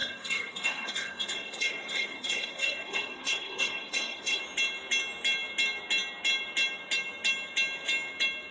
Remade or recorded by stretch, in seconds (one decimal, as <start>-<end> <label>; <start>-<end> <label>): 0.0-4.4 remade; 4.4-8.5 recorded